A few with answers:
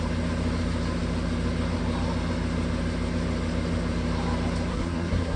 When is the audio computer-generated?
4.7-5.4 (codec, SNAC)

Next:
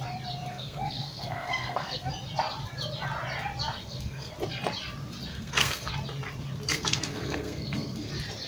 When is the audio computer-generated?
0.5-2.1 (codec, SNAC); 3.8-4.3; 5.3-5.9; 6.7-8.1

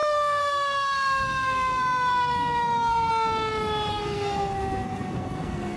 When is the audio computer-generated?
0.0-3.1 (codec, SNAC); 3.9-5.8

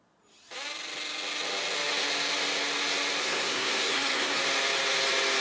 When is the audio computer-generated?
3.2-4.4 (codec, SNAC)